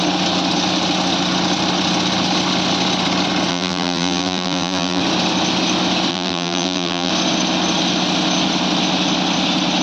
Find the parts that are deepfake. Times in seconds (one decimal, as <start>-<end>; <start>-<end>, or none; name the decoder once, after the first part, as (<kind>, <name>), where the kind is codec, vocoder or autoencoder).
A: 3.5-5.0 (vocoder, BigVGAN v2); 6.1-7.1